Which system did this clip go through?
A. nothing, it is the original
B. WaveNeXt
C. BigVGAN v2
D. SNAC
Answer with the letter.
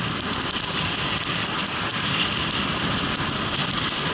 C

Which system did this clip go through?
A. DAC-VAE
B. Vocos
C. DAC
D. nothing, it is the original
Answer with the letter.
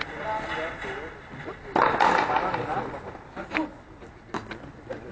D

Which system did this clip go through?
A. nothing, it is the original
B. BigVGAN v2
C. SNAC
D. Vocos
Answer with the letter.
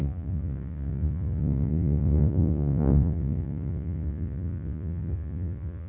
D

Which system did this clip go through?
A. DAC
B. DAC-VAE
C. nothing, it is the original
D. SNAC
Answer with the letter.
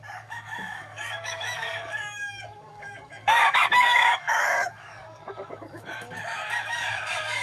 A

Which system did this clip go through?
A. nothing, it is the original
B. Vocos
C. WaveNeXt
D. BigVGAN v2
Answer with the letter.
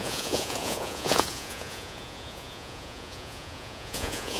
B